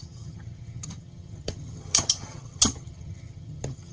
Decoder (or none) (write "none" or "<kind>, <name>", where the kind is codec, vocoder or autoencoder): vocoder, HiFi-GAN